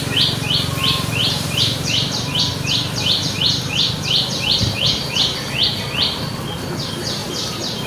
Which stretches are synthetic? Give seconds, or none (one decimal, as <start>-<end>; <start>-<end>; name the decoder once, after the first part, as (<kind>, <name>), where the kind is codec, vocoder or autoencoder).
1.2-2.4 (vocoder, BigVGAN v2); 7.2-7.9